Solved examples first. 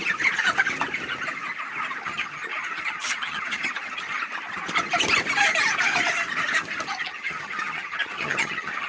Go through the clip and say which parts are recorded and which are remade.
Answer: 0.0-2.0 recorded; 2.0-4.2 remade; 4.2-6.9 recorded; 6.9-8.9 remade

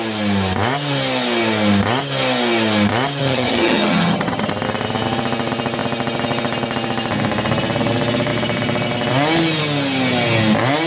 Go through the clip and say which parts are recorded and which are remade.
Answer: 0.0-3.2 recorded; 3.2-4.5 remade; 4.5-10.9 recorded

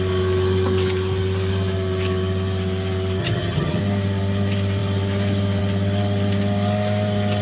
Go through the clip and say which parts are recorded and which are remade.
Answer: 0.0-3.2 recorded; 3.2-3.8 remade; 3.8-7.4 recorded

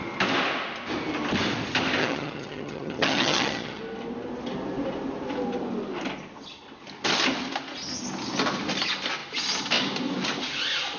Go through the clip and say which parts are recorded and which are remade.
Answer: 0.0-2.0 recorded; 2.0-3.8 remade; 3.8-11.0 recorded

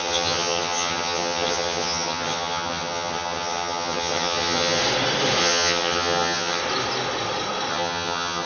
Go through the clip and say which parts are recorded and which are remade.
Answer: 0.0-4.8 remade; 4.8-5.4 recorded; 5.4-6.6 remade; 6.6-7.7 recorded; 7.7-8.5 remade